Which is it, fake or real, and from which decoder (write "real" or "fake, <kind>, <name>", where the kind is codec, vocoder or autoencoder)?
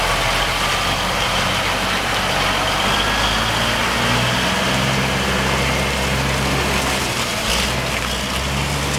real